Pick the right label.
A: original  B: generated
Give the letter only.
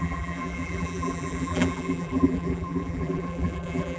B